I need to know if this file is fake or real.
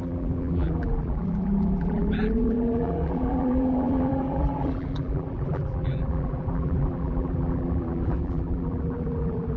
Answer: fake